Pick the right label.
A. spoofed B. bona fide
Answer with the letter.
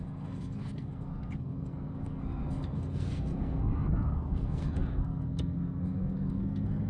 A